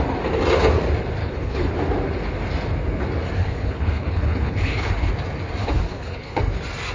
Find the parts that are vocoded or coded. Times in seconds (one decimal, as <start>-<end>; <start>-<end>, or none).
1.2-1.7; 3.4-5.1; 5.6-6.4